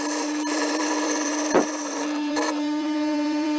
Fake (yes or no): yes